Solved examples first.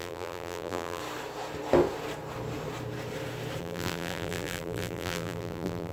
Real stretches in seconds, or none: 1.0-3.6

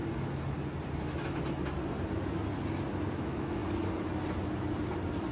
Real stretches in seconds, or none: 0.0-3.2; 3.6-5.3